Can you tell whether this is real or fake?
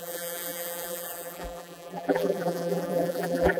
fake